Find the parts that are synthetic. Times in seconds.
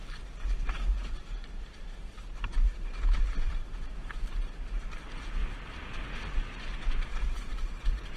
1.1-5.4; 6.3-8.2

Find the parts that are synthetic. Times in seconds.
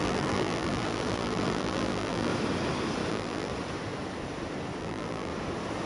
0.0-2.3; 3.1-3.5; 4.8-5.3